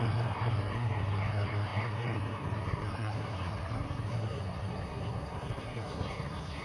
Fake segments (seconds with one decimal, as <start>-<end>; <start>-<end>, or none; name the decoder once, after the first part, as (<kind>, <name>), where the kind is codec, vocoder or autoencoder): 0.0-6.6 (codec, SNAC)